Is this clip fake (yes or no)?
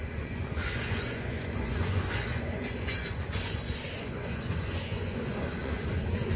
yes